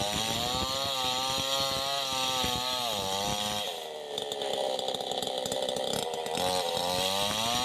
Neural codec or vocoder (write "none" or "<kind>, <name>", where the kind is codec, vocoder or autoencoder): none